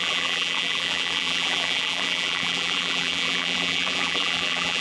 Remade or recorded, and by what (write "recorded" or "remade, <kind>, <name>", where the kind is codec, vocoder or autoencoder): remade, vocoder, BigVGAN v2